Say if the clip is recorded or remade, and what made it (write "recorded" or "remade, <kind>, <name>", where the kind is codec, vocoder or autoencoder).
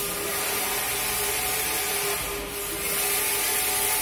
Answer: recorded